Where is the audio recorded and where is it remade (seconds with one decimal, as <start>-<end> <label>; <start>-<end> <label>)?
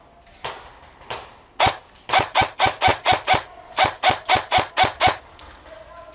0.0-6.1 recorded